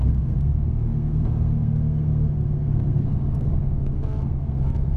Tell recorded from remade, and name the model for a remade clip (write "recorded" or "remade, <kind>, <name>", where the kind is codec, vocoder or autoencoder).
remade, codec, SNAC